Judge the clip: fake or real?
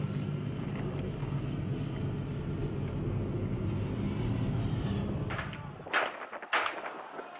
real